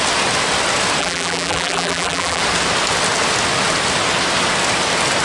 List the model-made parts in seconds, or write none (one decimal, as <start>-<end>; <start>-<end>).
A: 1.0-2.4